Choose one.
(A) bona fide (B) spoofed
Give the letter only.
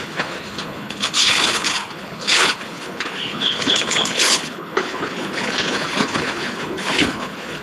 B